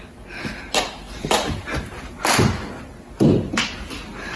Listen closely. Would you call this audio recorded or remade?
recorded